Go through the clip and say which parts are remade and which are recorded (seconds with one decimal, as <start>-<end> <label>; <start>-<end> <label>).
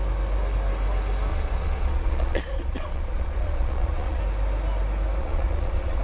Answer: 0.0-1.3 recorded; 1.3-4.2 remade; 4.2-5.2 recorded; 5.2-6.0 remade